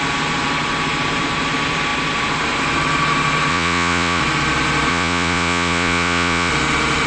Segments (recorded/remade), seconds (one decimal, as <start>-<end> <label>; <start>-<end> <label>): 0.0-3.5 recorded; 3.5-4.2 remade; 4.2-4.9 recorded; 4.9-6.5 remade; 6.5-7.1 recorded